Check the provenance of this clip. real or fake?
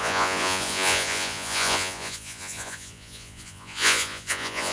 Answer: fake